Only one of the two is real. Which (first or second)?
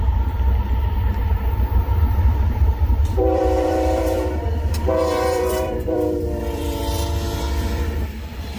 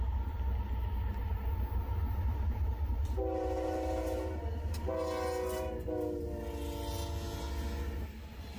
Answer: second